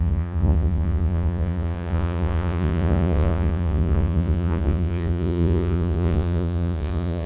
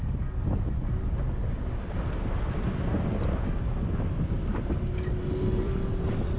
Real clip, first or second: second